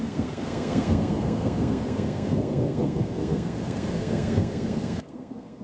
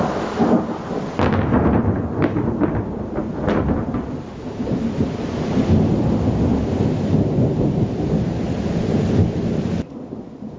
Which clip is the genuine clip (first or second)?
second